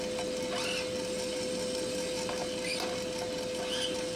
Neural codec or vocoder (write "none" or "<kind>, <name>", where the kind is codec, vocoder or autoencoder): none